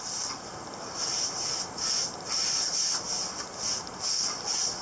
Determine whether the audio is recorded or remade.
recorded